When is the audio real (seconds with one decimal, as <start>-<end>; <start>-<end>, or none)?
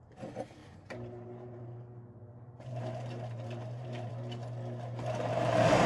0.0-0.6; 4.1-5.3